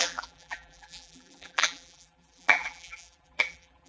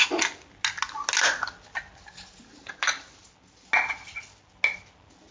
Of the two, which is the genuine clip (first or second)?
second